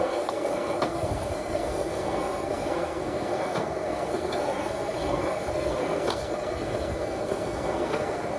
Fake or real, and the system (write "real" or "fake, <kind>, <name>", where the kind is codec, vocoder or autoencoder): fake, codec, SNAC